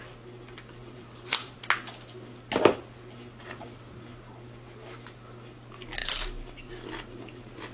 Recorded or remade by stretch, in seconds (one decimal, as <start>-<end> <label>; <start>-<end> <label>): 0.0-0.8 recorded; 0.8-1.6 remade; 1.6-7.7 recorded